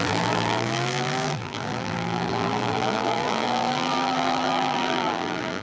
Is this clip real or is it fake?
fake